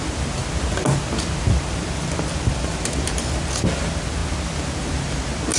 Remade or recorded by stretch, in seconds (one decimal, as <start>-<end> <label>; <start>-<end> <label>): 0.0-5.6 recorded